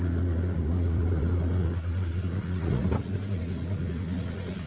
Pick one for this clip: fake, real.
fake